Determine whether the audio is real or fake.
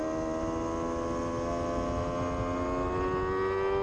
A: real